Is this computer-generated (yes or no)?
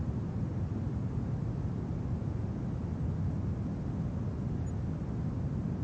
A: no